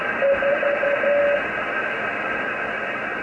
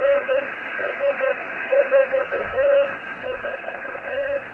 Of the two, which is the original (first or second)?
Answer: first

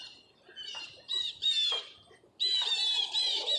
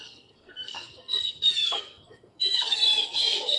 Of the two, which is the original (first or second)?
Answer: first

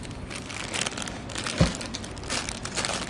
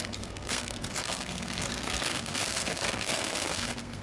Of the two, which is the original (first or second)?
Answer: first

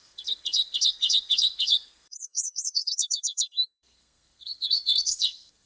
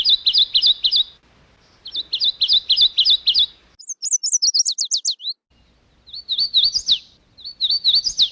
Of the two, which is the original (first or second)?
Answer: second